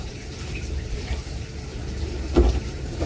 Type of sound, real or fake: fake